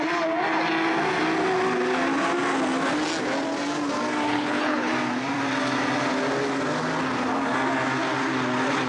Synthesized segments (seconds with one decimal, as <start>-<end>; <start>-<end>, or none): 4.3-4.9